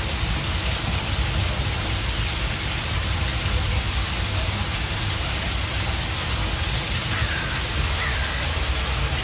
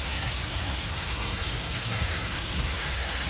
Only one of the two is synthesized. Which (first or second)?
second